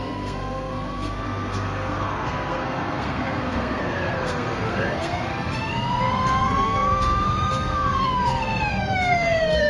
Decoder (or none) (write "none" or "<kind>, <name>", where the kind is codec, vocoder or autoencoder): codec, SNAC